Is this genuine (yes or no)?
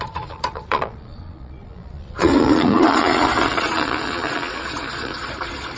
no